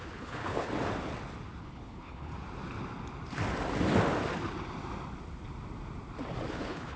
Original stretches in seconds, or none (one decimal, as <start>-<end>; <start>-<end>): 0.7-1.6; 2.3-6.5